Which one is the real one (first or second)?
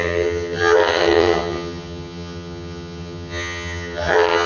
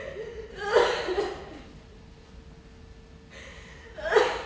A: second